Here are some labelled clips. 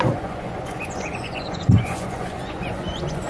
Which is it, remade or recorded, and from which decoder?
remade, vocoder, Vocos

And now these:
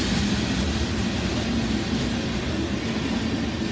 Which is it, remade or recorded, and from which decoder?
recorded